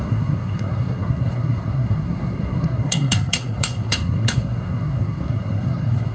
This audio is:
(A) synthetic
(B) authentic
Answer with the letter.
A